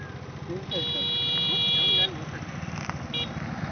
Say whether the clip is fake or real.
real